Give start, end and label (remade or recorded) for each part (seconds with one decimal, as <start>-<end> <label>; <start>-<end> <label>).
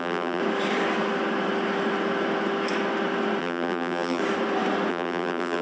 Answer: 0.0-0.4 remade; 0.4-3.4 recorded; 3.4-4.2 remade; 4.2-4.9 recorded; 4.9-5.6 remade